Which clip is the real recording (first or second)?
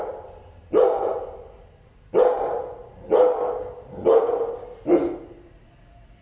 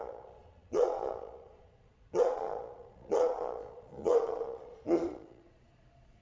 first